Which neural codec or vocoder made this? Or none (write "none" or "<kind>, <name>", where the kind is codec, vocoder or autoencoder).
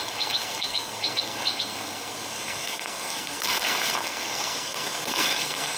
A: codec, SNAC